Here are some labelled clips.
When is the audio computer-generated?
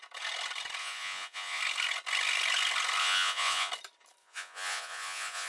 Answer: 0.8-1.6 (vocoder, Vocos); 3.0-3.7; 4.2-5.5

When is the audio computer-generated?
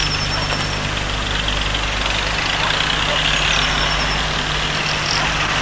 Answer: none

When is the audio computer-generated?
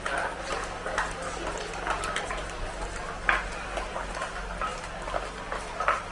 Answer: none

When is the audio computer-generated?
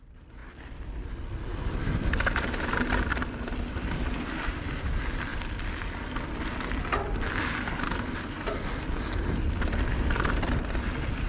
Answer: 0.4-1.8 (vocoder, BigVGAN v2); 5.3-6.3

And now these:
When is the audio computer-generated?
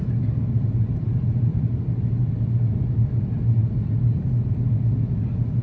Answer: none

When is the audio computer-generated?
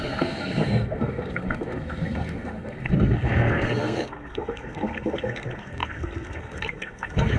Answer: 0.0-7.4 (codec, SNAC)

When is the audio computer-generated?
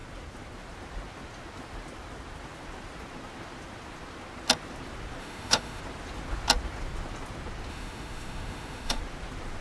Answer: 5.2-5.8 (autoencoder, DAC-VAE); 7.7-9.0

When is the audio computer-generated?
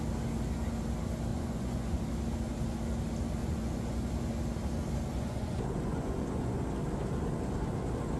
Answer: 1.3-2.0 (vocoder, Vocos); 3.4-4.1; 5.1-6.6